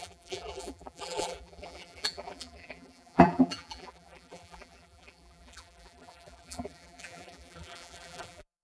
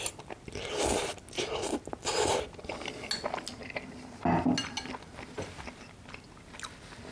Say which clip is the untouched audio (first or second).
second